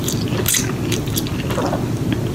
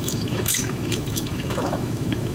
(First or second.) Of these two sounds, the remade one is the second